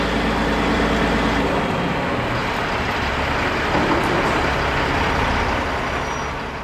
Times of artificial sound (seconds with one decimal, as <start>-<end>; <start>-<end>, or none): 2.4-3.1